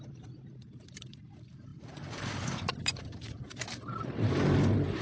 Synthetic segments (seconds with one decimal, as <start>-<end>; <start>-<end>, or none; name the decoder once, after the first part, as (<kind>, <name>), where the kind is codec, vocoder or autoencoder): 0.0-5.0 (vocoder, BigVGAN v2)